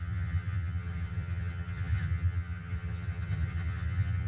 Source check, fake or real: fake